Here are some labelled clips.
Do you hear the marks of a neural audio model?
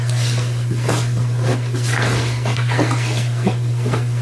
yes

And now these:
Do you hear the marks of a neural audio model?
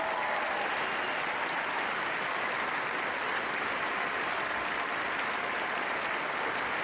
no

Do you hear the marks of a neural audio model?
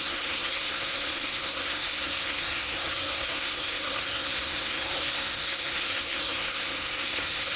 yes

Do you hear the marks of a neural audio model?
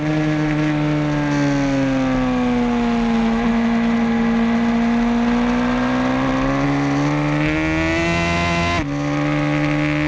no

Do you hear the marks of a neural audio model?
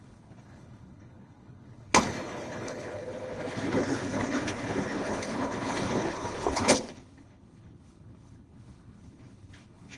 yes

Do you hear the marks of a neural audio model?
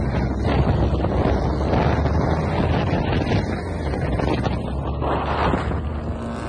no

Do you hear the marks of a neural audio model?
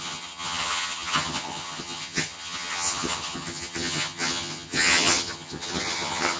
yes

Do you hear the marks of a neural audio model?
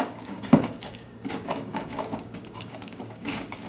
yes